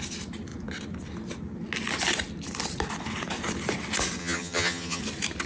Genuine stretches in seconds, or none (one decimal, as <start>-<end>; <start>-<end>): 0.0-4.2; 5.0-5.5